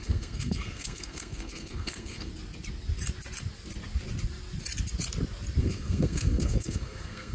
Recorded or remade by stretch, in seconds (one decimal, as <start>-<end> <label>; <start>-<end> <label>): 0.0-2.3 remade; 2.3-5.6 recorded; 5.6-7.3 remade